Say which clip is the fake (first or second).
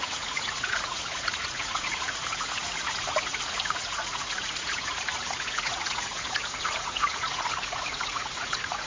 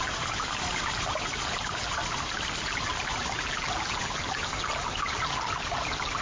first